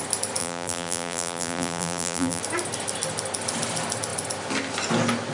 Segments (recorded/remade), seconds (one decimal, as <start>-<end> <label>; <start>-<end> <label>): 0.0-0.4 recorded; 0.4-2.4 remade; 2.4-5.3 recorded